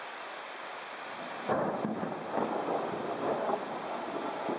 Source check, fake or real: real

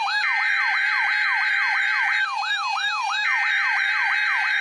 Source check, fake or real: fake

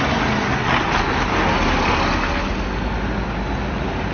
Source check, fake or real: real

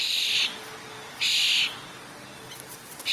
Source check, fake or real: real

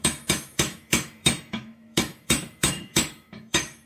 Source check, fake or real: fake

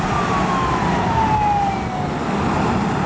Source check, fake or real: real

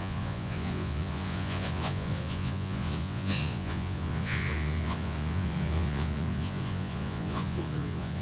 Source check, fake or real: fake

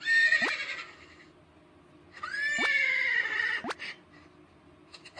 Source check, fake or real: real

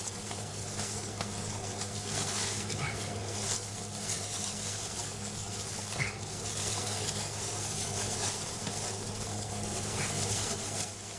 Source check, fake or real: fake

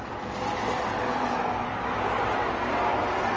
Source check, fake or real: real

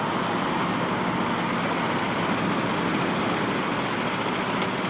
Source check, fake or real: real